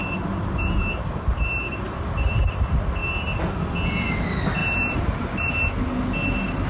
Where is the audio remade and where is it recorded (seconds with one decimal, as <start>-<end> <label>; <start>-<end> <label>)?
0.0-2.4 remade; 2.4-4.6 recorded; 4.6-5.5 remade; 5.5-6.7 recorded